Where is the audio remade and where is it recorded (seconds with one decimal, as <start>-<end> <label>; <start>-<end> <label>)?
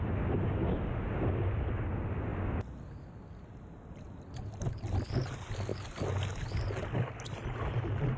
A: 0.0-8.2 recorded